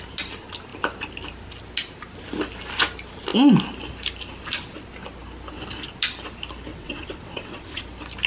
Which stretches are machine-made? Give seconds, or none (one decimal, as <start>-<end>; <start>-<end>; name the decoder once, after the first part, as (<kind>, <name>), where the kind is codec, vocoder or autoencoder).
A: 6.7-7.8 (vocoder, WaveNeXt)